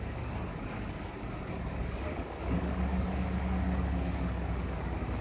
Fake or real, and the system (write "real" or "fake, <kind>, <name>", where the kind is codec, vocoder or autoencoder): fake, codec, DAC